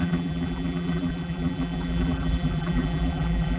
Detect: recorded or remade remade